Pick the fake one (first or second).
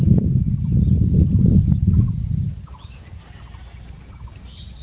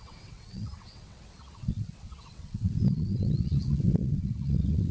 second